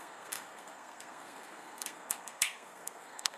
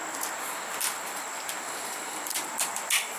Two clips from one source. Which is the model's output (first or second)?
first